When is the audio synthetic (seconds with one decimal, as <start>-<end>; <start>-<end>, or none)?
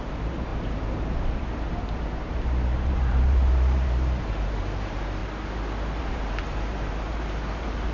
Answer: 0.0-5.2; 6.0-7.9